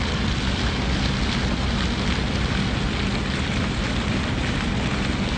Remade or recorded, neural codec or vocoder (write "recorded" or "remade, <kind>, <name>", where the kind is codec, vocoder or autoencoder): recorded